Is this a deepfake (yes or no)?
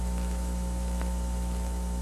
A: yes